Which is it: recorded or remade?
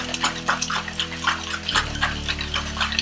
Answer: recorded